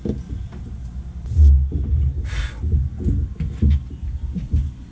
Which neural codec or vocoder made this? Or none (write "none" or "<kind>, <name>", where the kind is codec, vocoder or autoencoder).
none